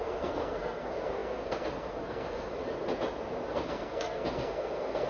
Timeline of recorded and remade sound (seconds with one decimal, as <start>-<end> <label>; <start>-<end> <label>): 0.0-2.5 remade; 2.5-3.5 recorded; 3.5-5.1 remade